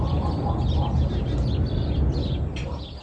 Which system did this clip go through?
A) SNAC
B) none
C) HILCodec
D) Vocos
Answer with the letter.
B